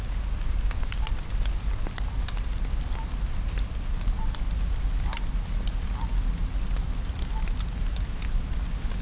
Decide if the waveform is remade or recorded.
recorded